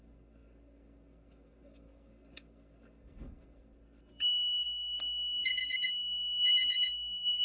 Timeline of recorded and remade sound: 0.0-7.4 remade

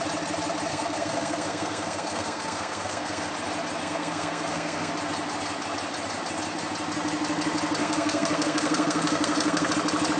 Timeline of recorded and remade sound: 0.0-0.7 recorded; 0.7-3.3 remade; 3.3-3.8 recorded; 3.8-4.9 remade; 4.9-7.8 recorded; 7.8-9.7 remade; 9.7-10.2 recorded